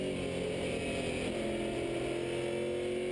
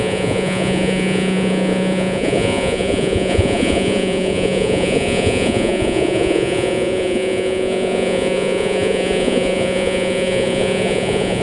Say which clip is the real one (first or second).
first